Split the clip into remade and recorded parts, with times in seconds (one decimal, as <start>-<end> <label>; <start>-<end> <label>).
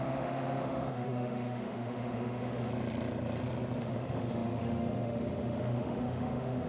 0.0-2.7 remade; 2.7-3.8 recorded; 3.8-6.7 remade